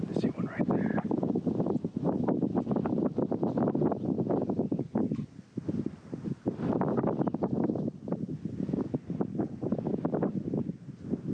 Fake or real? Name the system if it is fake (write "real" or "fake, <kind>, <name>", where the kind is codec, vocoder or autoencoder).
real